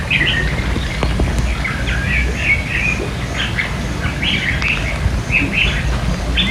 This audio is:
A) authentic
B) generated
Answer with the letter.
A